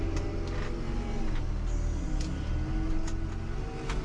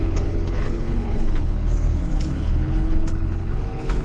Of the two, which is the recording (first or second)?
first